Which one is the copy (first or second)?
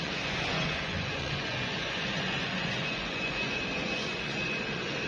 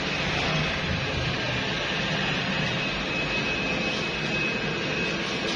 first